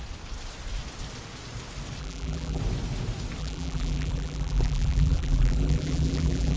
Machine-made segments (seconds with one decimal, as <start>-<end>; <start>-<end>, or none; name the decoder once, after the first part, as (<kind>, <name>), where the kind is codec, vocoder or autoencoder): 2.0-2.6 (vocoder, BigVGAN v2); 3.4-6.6